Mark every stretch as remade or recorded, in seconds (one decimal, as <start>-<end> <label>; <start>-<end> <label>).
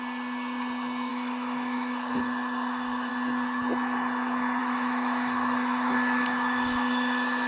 0.0-1.1 recorded; 1.1-3.1 remade; 3.1-4.6 recorded; 4.6-7.5 remade